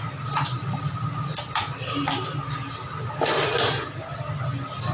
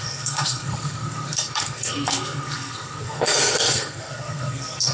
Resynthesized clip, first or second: second